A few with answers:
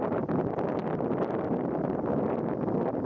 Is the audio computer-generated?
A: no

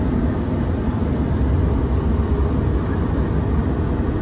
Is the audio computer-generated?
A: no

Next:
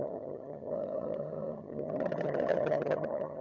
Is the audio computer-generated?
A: yes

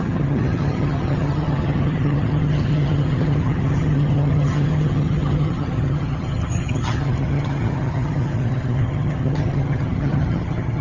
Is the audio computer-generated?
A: yes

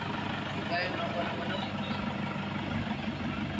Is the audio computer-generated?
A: no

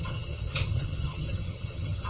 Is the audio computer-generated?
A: yes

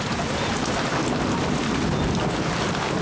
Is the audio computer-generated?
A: no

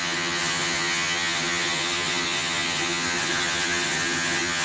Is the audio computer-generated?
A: yes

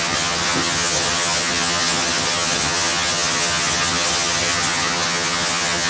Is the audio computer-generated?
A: yes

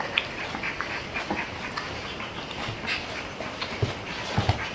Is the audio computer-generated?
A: no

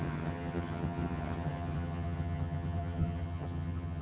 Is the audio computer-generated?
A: yes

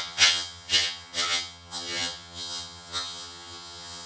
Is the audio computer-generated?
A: yes